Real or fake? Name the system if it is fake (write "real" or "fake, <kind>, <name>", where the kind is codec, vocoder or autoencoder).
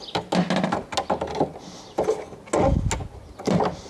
real